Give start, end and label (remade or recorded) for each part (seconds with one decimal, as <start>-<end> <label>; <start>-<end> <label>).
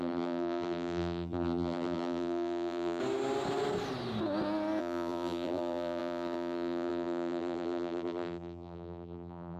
0.0-3.0 remade; 3.0-4.8 recorded; 4.8-9.6 remade